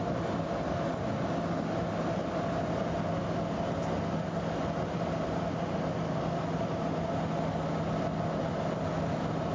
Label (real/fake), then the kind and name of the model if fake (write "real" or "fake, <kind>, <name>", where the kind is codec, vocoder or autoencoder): real